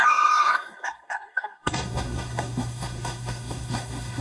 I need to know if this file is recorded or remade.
remade